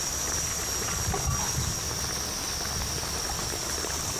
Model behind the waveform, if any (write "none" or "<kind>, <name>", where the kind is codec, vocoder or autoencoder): none